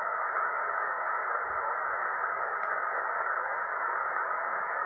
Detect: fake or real fake